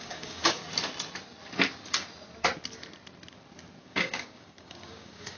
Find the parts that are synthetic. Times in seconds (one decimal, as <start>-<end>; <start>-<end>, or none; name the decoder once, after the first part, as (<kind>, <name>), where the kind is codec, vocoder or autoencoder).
0.0-0.6 (codec, DAC); 3.8-5.4